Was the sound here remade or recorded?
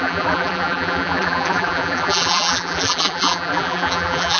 remade